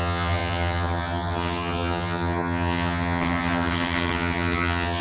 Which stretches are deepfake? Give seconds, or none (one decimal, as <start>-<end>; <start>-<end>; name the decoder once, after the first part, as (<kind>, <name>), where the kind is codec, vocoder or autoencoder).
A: 0.0-5.0 (vocoder, HiFi-GAN)